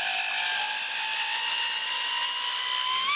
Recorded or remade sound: recorded